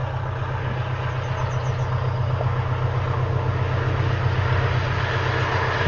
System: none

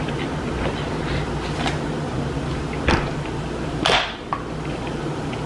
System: none